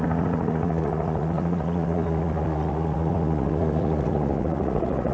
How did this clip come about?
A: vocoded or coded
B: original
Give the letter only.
A